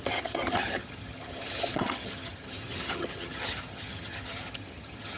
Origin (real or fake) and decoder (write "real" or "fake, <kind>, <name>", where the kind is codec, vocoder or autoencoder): fake, vocoder, HiFi-GAN